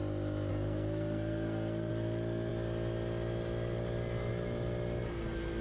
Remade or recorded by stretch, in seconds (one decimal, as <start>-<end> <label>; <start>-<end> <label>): 0.0-0.5 recorded; 0.5-1.9 remade; 1.9-5.6 recorded